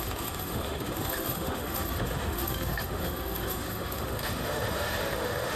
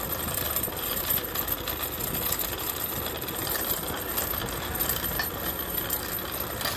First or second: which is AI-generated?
first